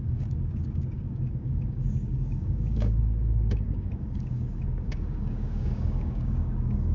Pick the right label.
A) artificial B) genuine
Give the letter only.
A